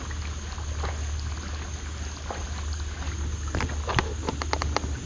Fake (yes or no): no